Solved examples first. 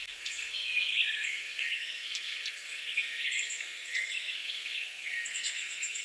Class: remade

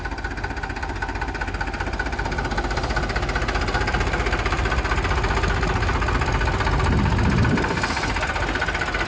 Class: recorded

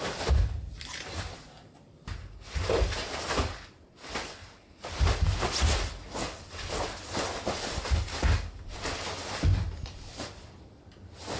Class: recorded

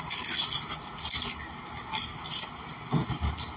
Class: recorded